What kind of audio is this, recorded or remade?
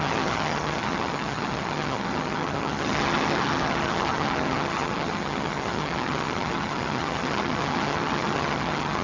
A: remade